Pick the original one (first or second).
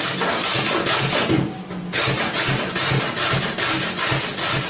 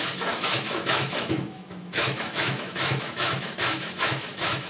first